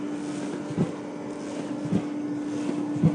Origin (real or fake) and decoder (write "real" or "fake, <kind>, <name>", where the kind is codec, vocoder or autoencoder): real